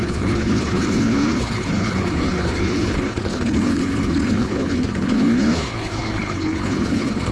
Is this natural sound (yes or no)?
no